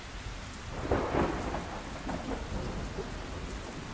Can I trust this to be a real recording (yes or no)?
yes